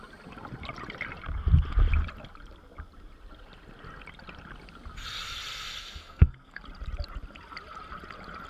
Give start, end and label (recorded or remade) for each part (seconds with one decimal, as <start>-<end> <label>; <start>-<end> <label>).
0.0-5.8 recorded; 5.8-6.6 remade; 6.6-8.5 recorded